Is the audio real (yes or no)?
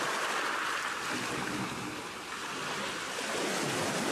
yes